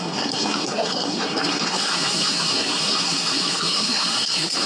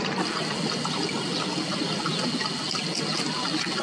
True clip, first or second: second